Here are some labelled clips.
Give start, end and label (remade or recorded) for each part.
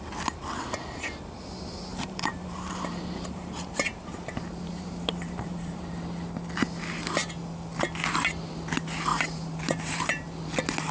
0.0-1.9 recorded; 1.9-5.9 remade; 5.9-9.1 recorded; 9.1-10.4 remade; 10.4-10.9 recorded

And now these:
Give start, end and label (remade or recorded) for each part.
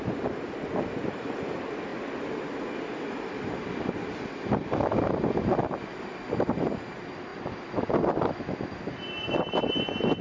0.0-10.2 recorded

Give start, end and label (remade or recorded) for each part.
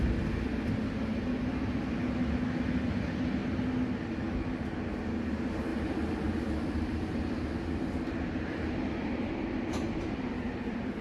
0.0-5.7 recorded; 5.7-9.2 remade; 9.2-11.0 recorded